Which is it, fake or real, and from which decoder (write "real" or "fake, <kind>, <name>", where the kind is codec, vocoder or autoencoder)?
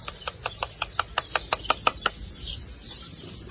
real